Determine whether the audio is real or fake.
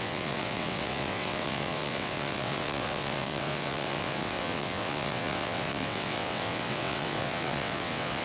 fake